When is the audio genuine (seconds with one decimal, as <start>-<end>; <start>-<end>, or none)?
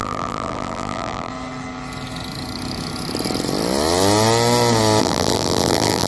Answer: 1.3-5.0